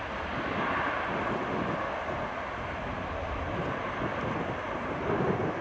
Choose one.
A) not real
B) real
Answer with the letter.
B